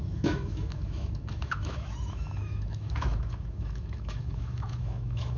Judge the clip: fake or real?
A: fake